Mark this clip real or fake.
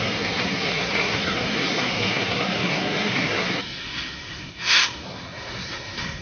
fake